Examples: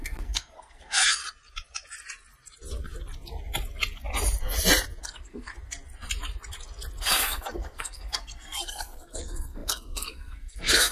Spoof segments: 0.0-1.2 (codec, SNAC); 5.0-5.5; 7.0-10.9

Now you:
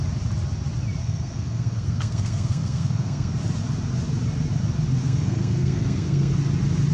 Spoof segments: 1.0-3.3 (codec, SNAC); 5.0-6.4